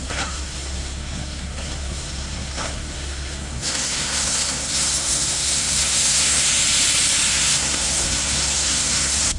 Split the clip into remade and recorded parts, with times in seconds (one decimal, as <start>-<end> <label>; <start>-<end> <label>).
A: 0.0-6.5 remade; 6.5-7.3 recorded; 7.3-9.4 remade